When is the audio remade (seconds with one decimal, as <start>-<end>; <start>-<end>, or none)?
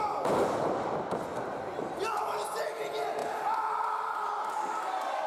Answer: none